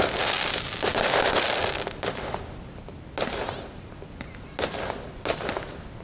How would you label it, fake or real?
real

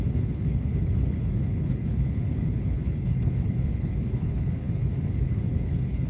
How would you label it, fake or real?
fake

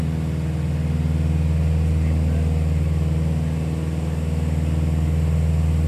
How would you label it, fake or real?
real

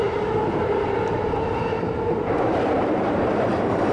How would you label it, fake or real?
fake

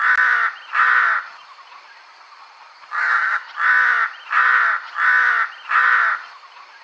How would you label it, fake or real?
real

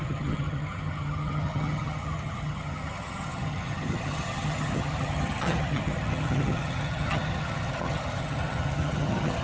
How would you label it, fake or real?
fake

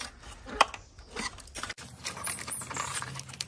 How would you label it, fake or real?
real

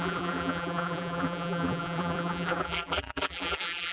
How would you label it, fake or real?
fake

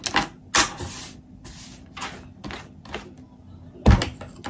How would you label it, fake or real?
real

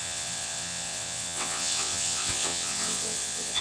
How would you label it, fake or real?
fake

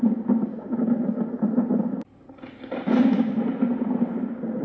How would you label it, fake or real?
real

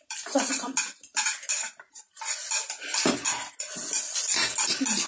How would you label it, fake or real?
real